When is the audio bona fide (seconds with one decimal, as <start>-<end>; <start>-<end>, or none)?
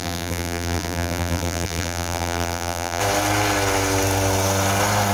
3.0-5.1